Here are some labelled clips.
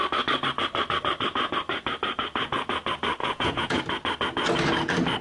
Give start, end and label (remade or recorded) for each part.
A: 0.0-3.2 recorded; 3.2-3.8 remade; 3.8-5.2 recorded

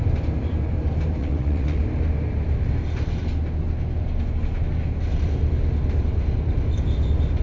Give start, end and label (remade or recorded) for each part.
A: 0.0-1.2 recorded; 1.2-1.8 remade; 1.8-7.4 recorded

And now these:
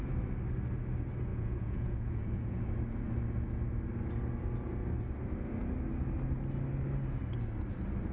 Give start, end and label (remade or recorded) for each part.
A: 0.0-1.3 recorded; 1.3-2.6 remade; 2.6-8.1 recorded

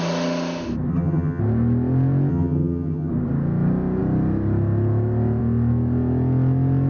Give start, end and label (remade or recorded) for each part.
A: 0.0-0.9 recorded; 0.9-1.4 remade; 1.4-2.3 recorded; 2.3-3.1 remade; 3.1-6.9 recorded

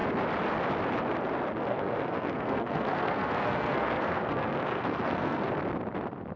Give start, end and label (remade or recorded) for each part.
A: 0.0-1.7 recorded; 1.7-5.5 remade; 5.5-6.4 recorded

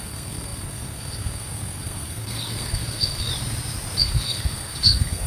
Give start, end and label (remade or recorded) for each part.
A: 0.0-3.3 remade; 3.3-4.0 recorded; 4.0-5.3 remade